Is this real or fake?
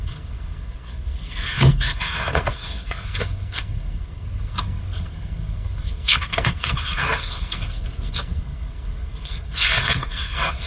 fake